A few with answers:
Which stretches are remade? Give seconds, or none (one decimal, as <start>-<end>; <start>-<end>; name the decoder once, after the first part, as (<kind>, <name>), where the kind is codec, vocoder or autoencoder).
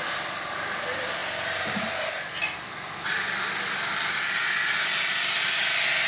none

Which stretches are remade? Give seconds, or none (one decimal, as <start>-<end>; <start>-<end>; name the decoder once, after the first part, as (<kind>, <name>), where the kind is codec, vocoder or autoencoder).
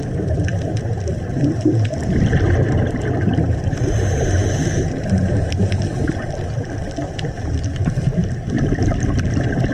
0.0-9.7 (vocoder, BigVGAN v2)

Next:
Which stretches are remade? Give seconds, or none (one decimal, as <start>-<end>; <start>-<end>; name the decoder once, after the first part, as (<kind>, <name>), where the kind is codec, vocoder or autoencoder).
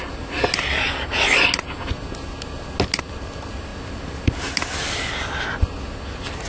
none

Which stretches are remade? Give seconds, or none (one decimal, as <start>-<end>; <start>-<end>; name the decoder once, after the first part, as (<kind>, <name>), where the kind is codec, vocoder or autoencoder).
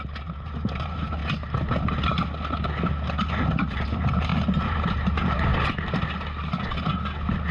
0.0-1.2 (vocoder, BigVGAN v2); 3.3-5.5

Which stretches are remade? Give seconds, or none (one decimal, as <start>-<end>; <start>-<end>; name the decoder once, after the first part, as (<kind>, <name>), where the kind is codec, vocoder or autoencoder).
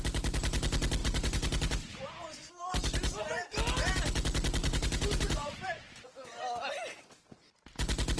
1.0-2.4 (vocoder, BigVGAN v2); 4.6-7.0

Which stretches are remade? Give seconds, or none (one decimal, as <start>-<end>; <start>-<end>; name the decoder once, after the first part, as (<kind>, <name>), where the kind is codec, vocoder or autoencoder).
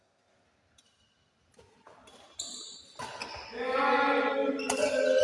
none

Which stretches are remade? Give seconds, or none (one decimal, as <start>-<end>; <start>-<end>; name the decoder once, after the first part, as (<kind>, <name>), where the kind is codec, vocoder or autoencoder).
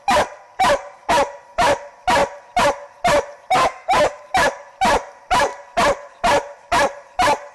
0.0-2.2 (vocoder, BigVGAN v2); 4.2-5.5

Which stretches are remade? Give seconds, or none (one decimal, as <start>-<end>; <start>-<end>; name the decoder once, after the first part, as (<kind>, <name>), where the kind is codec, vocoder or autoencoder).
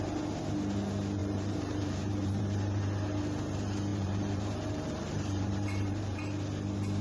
1.2-2.4 (vocoder, BigVGAN v2); 3.9-6.2